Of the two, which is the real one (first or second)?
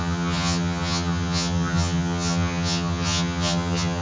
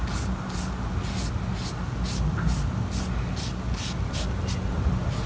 second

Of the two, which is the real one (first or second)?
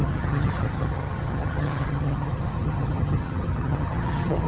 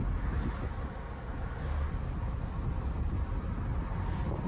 second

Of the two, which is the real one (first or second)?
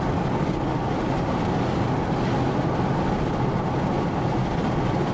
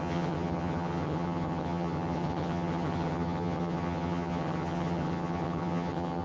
first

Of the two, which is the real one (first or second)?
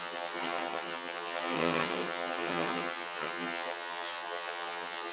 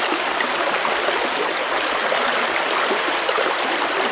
second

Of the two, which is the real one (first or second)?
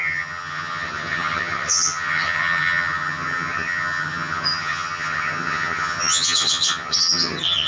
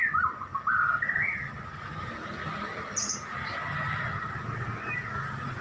second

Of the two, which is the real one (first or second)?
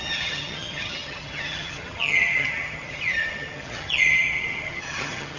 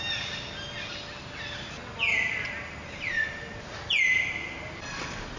second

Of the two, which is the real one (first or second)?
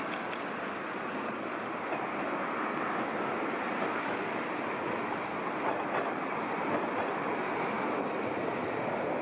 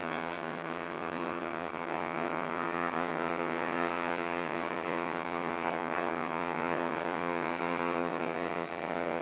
first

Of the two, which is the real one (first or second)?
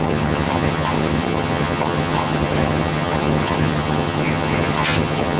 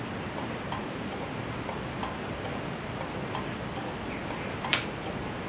second